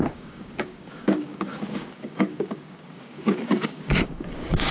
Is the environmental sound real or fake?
fake